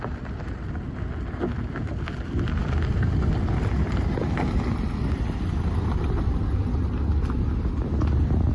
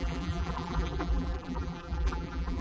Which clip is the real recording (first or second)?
first